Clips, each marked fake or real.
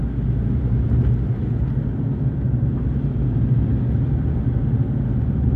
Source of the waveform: real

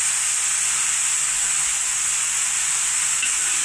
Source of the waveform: real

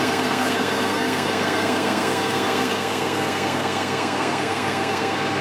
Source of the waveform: fake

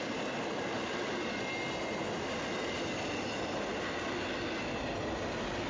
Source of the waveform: real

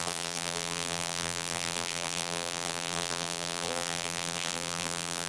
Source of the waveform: fake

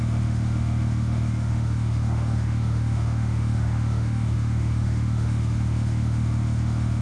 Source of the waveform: fake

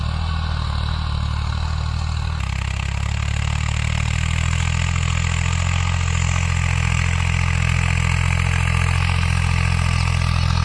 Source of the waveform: real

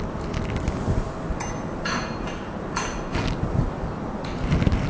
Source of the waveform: real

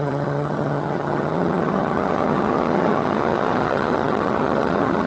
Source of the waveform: fake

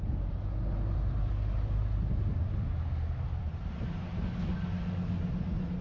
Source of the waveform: real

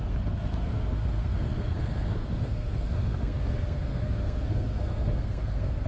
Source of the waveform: fake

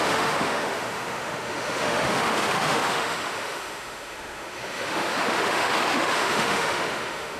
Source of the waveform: fake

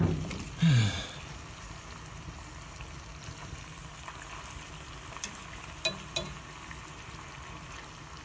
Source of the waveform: real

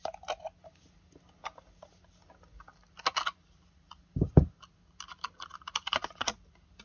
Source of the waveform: real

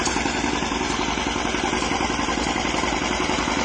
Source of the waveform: real